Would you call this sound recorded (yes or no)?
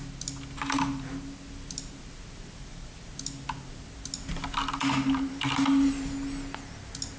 yes